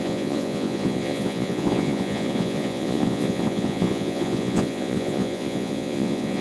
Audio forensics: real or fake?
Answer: fake